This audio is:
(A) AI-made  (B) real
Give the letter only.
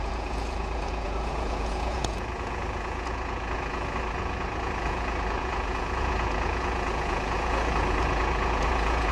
A